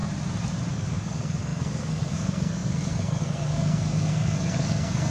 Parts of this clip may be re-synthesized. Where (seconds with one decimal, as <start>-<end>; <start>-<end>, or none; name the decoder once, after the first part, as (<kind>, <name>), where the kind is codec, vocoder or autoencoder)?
0.7-5.1 (codec, SNAC)